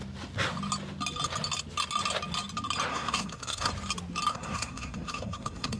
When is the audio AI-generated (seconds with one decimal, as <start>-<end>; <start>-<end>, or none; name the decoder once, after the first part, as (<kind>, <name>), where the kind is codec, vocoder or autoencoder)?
2.9-3.7 (codec, SNAC); 4.3-5.8